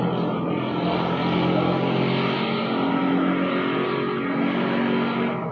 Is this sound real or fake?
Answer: real